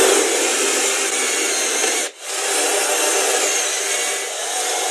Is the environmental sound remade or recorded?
recorded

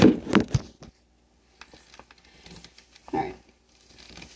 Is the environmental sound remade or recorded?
recorded